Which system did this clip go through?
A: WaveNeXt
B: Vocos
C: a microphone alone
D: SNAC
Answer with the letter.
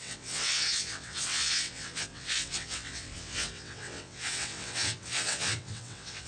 A